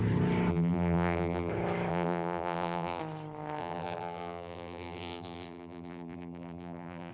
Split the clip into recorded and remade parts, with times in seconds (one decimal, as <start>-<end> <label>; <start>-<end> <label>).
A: 0.0-0.5 recorded; 0.5-1.5 remade; 1.5-1.9 recorded; 1.9-3.0 remade; 3.0-3.6 recorded; 3.6-7.1 remade

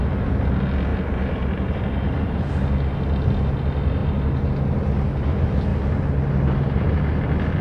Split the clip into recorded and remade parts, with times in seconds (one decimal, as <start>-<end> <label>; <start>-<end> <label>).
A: 0.0-0.9 recorded; 0.9-2.5 remade; 2.5-4.0 recorded; 4.0-4.5 remade; 4.5-7.6 recorded